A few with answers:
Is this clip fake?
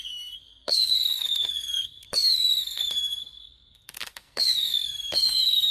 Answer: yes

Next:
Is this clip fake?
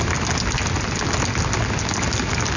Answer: no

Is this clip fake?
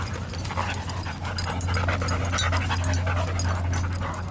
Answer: no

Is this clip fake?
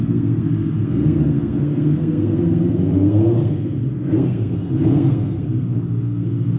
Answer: yes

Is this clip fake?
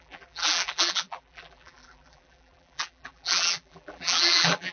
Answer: yes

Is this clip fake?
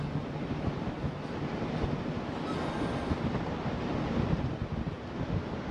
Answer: no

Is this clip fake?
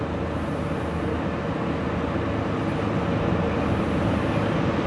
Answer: no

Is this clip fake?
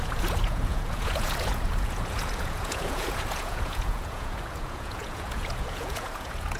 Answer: yes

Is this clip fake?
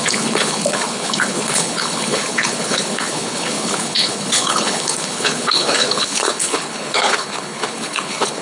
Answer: yes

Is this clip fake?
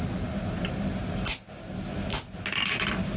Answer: no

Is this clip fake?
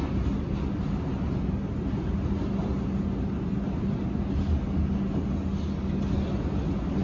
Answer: no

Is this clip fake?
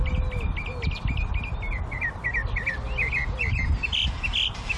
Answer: no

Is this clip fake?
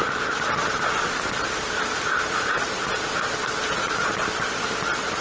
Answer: no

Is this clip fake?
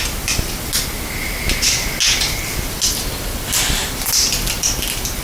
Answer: no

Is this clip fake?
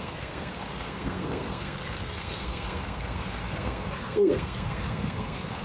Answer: yes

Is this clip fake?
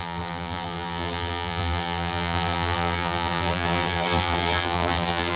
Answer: yes